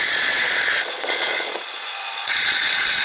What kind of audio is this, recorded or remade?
remade